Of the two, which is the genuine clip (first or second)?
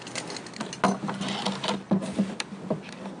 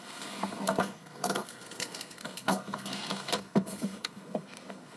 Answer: first